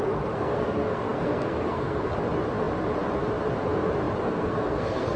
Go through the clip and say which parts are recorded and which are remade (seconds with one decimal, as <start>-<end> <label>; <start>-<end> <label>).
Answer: 0.0-2.1 remade; 2.1-4.2 recorded; 4.2-5.2 remade